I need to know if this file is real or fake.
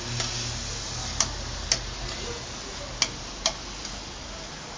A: real